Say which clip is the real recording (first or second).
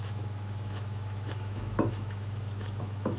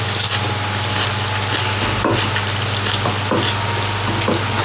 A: second